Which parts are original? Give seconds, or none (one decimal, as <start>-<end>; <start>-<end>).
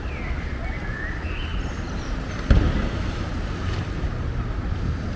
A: 0.0-5.2